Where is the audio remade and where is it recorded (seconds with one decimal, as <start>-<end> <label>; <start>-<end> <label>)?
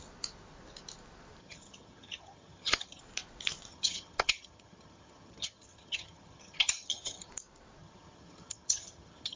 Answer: 0.0-1.4 recorded; 1.4-3.0 remade; 3.0-3.7 recorded; 3.7-7.3 remade; 7.3-7.8 recorded; 7.8-9.4 remade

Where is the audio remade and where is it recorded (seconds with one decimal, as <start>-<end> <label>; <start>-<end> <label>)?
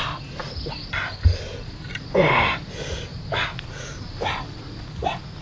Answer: 0.0-5.4 recorded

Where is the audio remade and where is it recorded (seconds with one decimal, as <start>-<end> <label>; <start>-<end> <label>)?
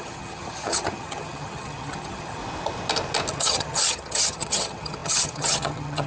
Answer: 0.0-2.4 remade; 2.4-3.3 recorded; 3.3-6.1 remade